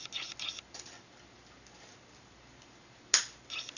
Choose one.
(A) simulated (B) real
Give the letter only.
B